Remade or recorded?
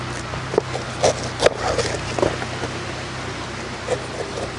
recorded